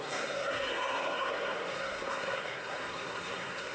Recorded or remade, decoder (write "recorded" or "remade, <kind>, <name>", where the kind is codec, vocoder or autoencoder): remade, codec, SNAC